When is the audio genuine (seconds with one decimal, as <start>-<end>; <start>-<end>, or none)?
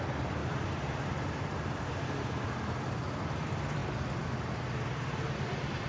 0.4-1.6; 3.8-4.6